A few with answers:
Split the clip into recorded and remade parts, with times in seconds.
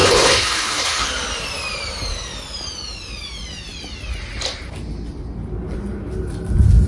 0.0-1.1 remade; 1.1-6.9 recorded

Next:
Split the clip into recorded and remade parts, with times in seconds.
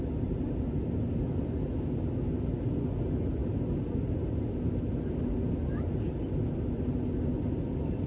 0.0-8.1 recorded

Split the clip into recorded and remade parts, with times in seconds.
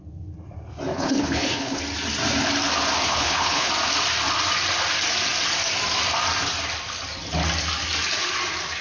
0.0-0.9 recorded; 0.9-1.8 remade; 1.8-3.1 recorded; 3.1-3.7 remade; 3.7-8.8 recorded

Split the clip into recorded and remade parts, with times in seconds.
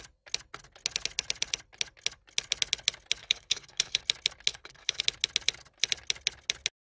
0.0-3.2 recorded; 3.2-4.0 remade; 4.0-4.5 recorded; 4.5-5.0 remade; 5.0-6.8 recorded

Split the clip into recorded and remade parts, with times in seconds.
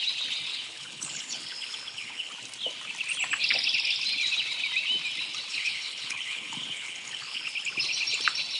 0.0-0.5 recorded; 0.5-2.3 remade; 2.3-5.5 recorded; 5.5-7.5 remade; 7.5-8.6 recorded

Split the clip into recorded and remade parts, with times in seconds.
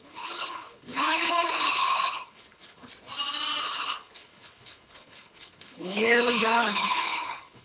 0.0-2.9 remade; 2.9-3.6 recorded; 3.6-7.6 remade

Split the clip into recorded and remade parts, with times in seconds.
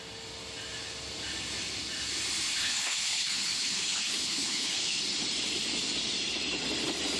0.0-2.6 recorded; 2.6-5.0 remade; 5.0-7.2 recorded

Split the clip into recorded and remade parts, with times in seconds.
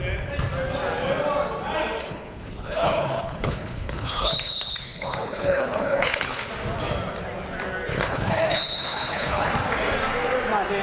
0.0-2.0 recorded; 2.0-6.5 remade; 6.5-7.9 recorded; 7.9-9.5 remade; 9.5-10.8 recorded